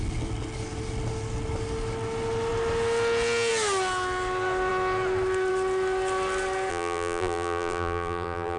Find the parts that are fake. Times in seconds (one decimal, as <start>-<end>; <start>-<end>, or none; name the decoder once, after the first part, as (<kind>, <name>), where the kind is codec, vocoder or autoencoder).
6.7-8.6 (vocoder, BigVGAN v2)